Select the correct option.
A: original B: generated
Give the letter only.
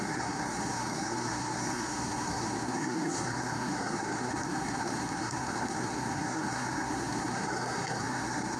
B